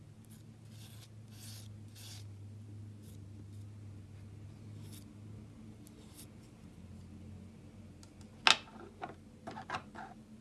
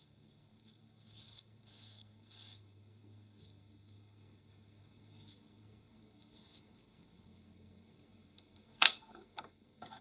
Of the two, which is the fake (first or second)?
second